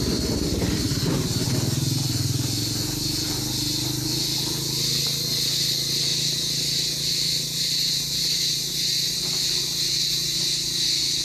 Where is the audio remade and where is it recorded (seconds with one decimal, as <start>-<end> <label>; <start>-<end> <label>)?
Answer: 0.0-11.2 recorded